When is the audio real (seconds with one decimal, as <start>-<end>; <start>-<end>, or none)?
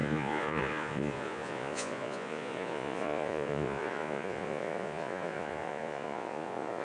none